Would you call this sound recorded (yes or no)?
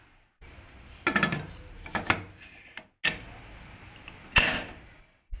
yes